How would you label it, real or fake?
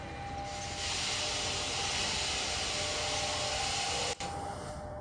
real